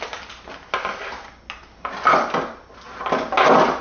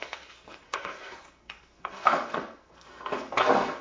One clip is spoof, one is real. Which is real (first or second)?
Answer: first